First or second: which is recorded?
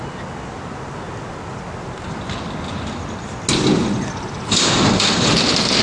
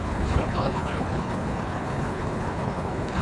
first